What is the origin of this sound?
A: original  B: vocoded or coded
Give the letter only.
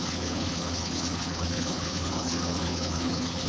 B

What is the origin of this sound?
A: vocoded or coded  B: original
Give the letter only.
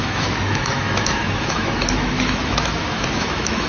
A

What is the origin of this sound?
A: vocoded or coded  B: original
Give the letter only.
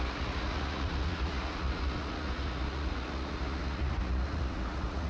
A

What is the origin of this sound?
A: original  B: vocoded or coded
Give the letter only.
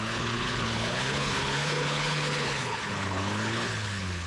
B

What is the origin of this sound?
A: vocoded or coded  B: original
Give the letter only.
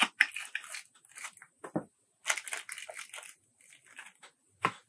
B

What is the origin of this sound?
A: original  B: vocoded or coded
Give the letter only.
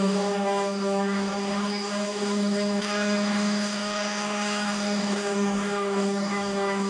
B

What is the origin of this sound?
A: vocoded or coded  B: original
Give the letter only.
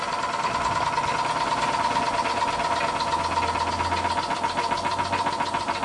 B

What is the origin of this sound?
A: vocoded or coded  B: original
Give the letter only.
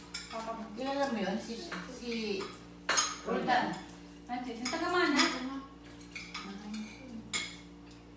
B